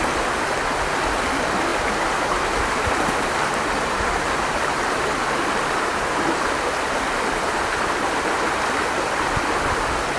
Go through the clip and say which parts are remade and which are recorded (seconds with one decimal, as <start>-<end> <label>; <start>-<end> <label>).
0.0-1.7 recorded; 1.7-5.1 remade; 5.1-10.2 recorded